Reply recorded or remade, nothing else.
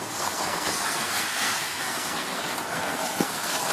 remade